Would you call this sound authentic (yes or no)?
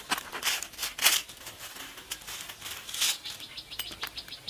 yes